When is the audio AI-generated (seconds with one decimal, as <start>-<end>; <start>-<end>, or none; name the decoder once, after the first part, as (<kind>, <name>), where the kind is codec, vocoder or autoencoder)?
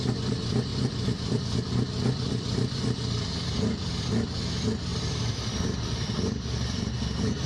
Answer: 0.7-3.9 (vocoder, BigVGAN v2); 4.9-6.9